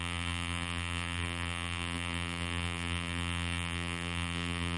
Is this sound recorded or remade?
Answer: remade